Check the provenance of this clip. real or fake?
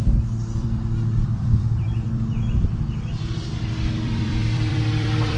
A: fake